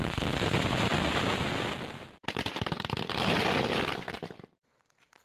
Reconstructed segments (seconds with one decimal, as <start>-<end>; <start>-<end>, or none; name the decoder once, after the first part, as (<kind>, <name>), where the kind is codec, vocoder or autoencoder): 0.0-0.9 (vocoder, BigVGAN v2); 1.9-3.1; 3.9-5.2